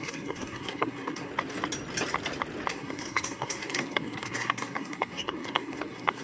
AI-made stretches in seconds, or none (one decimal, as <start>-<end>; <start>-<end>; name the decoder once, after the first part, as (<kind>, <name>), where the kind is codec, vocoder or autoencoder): 0.0-1.3 (codec, SNAC); 2.7-6.2